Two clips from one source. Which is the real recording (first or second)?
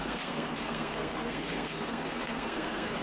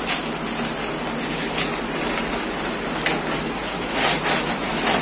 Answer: second